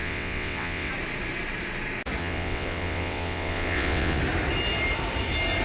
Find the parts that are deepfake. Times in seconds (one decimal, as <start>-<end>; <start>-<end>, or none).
0.0-0.9; 2.2-4.2